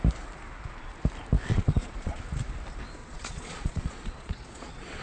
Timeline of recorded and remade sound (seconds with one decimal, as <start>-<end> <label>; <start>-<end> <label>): 0.0-1.5 recorded; 1.5-2.2 remade; 2.2-3.0 recorded; 3.0-5.0 remade